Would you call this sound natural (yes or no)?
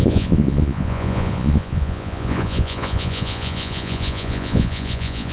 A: no